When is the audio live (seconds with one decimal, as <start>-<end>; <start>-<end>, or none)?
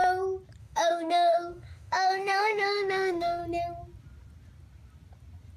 0.0-0.6; 3.4-5.6